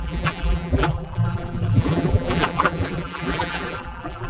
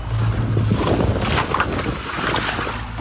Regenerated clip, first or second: first